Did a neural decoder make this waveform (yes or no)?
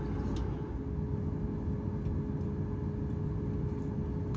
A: no